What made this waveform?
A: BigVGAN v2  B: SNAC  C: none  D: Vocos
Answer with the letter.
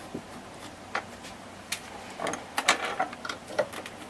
C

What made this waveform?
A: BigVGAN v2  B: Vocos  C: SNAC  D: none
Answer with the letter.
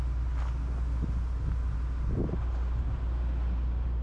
D